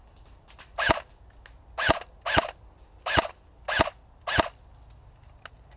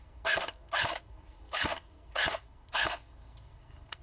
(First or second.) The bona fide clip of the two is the first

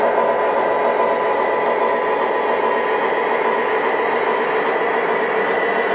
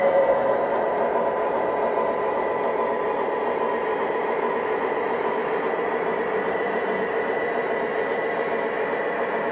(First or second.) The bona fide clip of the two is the first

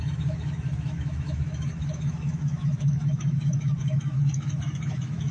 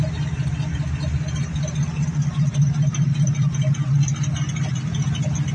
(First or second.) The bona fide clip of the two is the second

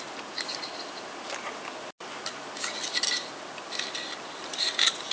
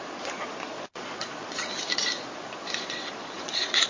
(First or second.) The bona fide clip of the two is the first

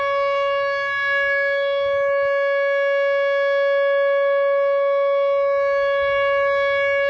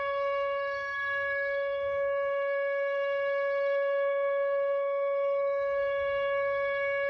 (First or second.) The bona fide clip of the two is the first